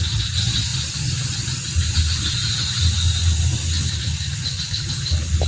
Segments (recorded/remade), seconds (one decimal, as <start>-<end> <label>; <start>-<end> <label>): 0.0-5.5 recorded